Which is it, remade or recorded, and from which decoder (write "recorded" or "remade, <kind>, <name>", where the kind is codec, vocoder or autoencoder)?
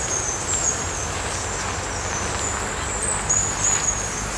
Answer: recorded